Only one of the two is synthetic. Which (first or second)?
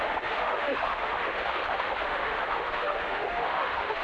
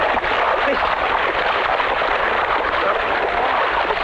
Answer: first